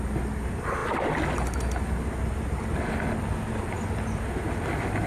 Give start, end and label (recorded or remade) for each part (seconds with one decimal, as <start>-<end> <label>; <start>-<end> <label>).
0.0-5.1 recorded